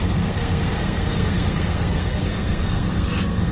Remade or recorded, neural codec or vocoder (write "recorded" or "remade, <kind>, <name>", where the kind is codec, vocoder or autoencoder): remade, codec, SNAC